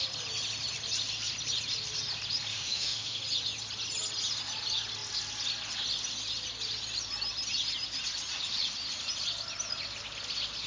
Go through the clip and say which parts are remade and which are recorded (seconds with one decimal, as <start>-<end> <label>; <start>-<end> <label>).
0.0-2.5 recorded; 2.5-3.2 remade; 3.2-10.7 recorded